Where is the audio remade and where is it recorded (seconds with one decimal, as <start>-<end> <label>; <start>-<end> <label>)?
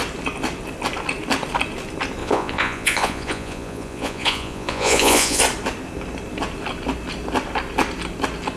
0.0-2.2 recorded; 2.2-5.4 remade; 5.4-8.6 recorded